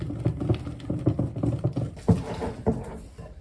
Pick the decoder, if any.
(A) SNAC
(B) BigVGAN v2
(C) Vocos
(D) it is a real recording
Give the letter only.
D